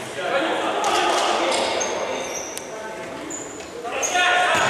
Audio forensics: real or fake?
real